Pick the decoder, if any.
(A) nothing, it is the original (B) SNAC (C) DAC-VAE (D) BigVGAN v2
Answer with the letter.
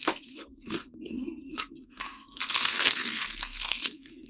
B